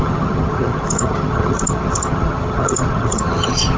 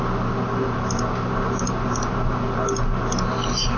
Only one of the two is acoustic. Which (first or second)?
second